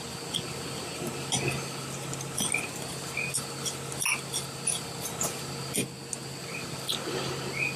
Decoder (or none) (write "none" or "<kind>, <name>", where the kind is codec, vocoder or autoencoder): none